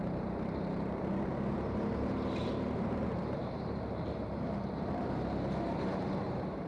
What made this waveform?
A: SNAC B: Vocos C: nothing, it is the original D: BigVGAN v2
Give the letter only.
D